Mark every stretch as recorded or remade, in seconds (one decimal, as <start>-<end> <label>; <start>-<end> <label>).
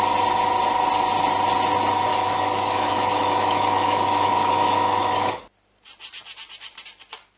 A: 0.0-2.1 recorded; 2.1-5.4 remade; 5.4-7.4 recorded